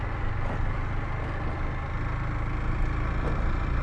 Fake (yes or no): no